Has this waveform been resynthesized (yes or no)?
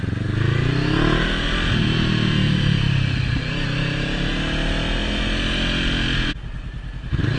no